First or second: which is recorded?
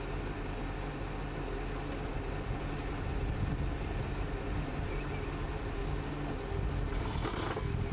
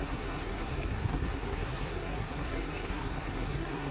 first